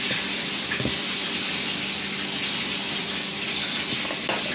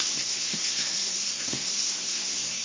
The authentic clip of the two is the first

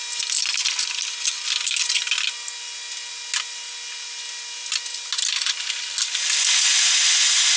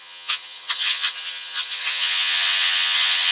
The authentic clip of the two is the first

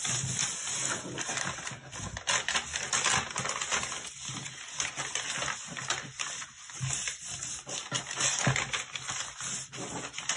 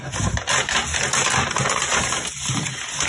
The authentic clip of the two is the first